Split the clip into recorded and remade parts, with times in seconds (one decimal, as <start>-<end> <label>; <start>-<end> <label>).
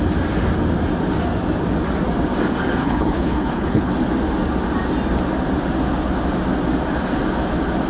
0.0-2.8 recorded; 2.8-3.9 remade; 3.9-7.9 recorded